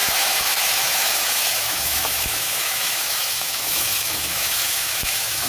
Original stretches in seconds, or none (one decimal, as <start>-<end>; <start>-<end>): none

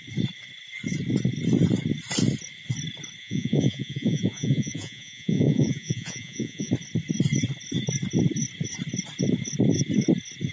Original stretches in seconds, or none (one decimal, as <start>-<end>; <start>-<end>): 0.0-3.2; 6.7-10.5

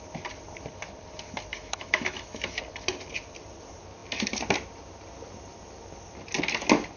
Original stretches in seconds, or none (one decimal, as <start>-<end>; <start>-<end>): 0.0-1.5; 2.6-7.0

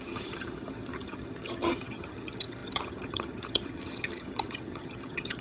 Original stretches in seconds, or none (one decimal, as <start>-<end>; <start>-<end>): none

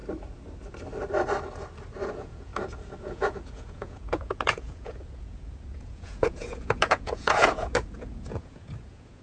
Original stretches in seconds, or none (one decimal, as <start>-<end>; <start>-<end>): 0.0-2.1; 2.5-3.0